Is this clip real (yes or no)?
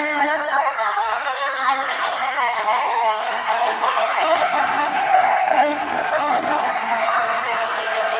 no